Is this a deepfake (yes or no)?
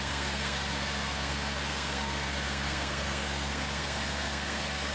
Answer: yes